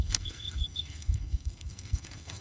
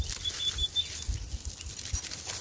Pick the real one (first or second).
second